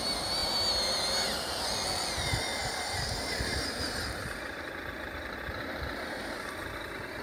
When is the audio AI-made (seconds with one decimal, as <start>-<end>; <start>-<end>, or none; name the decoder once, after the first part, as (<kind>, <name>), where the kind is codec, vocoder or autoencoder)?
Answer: 2.6-6.5 (vocoder, BigVGAN v2)